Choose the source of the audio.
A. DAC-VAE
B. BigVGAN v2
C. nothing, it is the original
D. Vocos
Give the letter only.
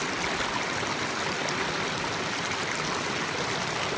C